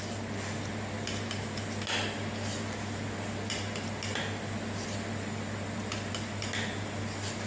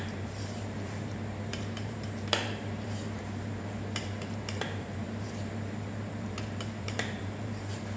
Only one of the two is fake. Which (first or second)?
second